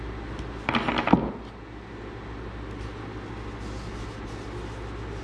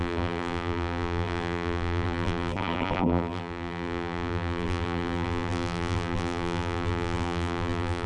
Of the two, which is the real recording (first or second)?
first